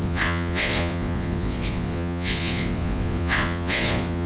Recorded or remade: remade